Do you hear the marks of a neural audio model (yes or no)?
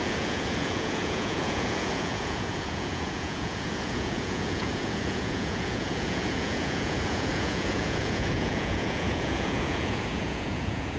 yes